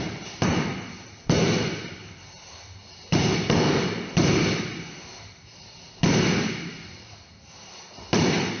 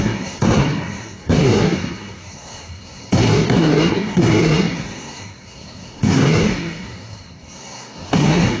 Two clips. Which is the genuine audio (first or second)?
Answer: first